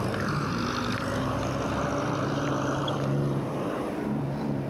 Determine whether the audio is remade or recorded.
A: remade